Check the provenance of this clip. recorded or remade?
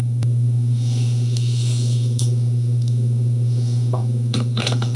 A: remade